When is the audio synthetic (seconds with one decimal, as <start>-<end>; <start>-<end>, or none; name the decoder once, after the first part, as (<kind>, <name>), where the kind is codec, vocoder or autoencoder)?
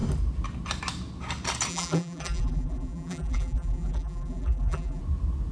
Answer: 1.7-5.0 (vocoder, BigVGAN v2)